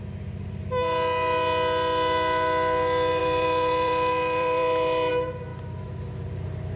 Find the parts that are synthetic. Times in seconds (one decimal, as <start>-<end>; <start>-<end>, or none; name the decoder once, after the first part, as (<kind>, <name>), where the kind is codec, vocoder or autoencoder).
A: 3.2-5.1 (vocoder, BigVGAN v2); 5.5-6.8

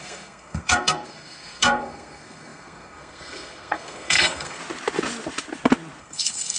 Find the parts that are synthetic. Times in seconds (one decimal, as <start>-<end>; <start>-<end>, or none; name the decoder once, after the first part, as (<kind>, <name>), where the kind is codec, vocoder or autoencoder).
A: 0.0-4.6 (codec, SNAC); 6.0-6.6

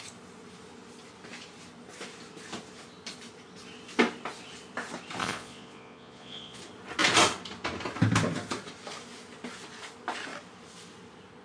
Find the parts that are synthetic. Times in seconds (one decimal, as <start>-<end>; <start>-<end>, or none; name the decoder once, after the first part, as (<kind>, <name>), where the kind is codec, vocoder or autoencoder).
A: 5.2-6.6 (vocoder, Vocos)

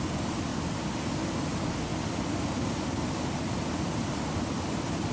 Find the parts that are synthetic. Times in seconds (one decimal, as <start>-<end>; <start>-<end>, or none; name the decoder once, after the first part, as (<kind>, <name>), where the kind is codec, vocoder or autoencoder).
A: 0.5-1.1 (vocoder, BigVGAN v2); 1.9-5.1

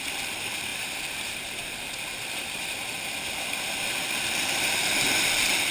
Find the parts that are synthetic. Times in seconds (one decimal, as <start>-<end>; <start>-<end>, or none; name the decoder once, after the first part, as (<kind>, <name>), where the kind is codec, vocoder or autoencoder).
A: none